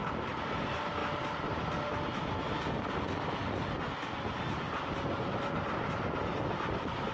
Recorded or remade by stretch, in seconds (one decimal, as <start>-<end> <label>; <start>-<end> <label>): 0.0-7.1 recorded